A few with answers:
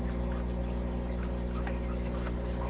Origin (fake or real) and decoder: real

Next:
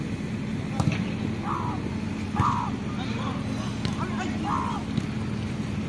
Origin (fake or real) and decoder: real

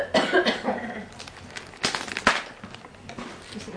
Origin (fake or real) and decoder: real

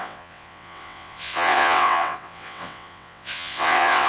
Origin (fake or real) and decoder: fake, vocoder, WaveNeXt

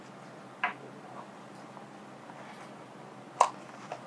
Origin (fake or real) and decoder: real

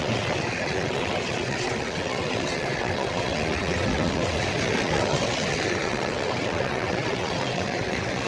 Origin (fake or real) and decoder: fake, vocoder, WaveNeXt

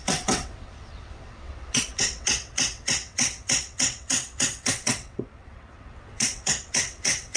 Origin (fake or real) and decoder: fake, vocoder, WaveNeXt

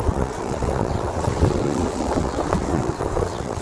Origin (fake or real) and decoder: fake, vocoder, WaveNeXt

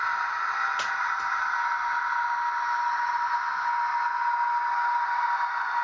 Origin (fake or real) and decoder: real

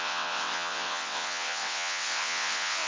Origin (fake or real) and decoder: fake, vocoder, WaveNeXt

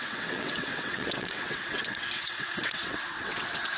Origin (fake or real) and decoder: fake, vocoder, WaveNeXt